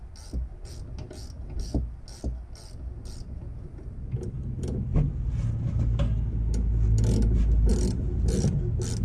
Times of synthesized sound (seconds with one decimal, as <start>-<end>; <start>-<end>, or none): none

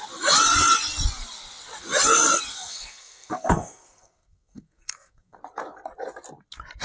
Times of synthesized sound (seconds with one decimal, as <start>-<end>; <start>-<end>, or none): 2.5-5.4

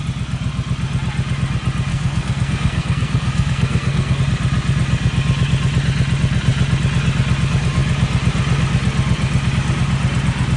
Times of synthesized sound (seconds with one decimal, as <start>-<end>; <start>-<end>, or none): 1.9-4.2

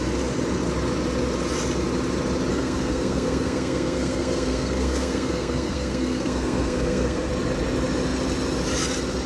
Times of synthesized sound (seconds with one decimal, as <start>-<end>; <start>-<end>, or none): 2.5-7.3

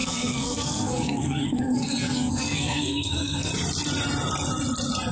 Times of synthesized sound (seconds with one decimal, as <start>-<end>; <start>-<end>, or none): 0.0-3.5